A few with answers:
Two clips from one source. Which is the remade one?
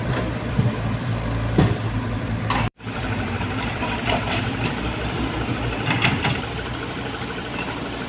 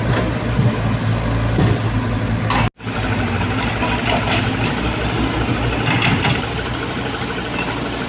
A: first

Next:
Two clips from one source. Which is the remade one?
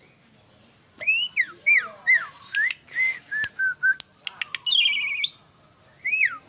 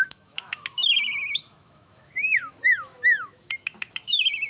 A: second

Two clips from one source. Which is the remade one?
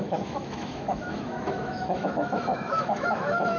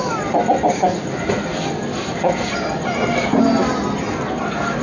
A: first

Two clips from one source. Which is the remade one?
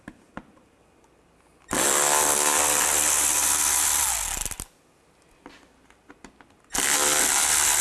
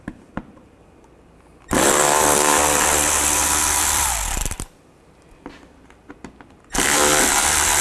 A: second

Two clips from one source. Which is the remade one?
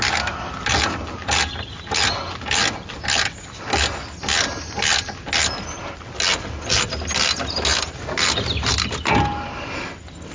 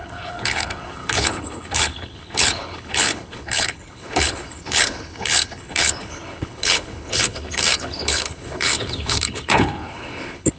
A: second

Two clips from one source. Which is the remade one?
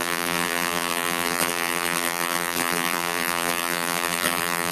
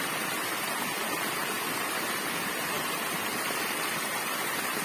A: first